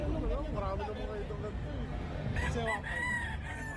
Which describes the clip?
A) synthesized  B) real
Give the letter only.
B